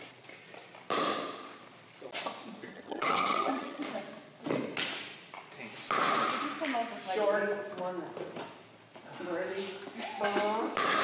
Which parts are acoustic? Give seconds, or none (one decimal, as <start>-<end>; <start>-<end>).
0.0-2.7; 3.8-11.0